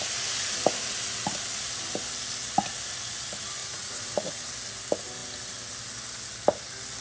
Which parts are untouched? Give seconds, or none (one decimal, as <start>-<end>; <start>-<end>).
0.0-3.6; 4.5-7.0